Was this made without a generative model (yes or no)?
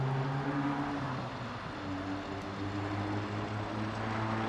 yes